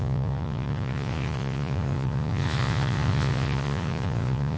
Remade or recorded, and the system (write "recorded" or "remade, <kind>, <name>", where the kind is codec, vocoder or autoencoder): remade, vocoder, Vocos